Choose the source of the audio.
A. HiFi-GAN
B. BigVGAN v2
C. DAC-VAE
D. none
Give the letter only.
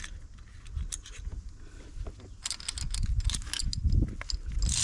D